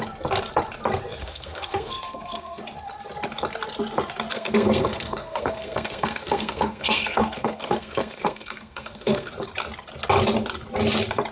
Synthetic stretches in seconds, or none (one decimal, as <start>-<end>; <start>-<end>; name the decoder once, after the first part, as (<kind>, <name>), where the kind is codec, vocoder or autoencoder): 1.2-2.6 (codec, SNAC); 4.3-9.3